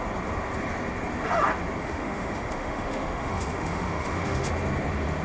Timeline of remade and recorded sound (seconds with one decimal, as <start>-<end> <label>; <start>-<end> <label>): 0.0-1.8 recorded; 1.8-4.5 remade; 4.5-5.2 recorded